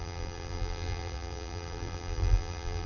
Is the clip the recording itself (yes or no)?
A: no